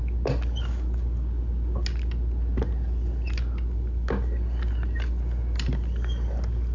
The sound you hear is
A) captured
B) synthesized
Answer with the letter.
A